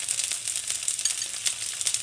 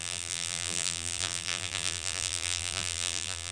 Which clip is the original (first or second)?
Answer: first